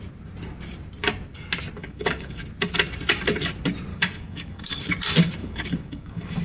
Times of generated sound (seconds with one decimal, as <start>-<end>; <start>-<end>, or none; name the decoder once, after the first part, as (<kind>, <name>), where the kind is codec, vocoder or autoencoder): 1.8-2.4 (codec, DAC); 3.9-4.9; 5.4-6.4